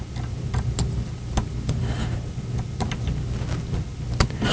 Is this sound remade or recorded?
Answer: recorded